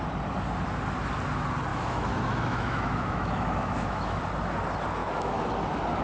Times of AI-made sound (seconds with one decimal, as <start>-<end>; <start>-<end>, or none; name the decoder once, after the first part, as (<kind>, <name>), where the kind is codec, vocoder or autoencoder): 1.7-4.2 (autoencoder, DAC-VAE); 5.0-5.5